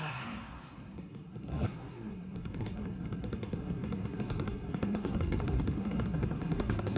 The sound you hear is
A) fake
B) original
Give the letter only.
A